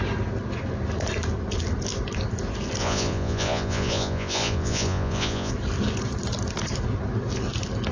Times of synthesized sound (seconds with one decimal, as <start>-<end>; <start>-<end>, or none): 2.8-5.5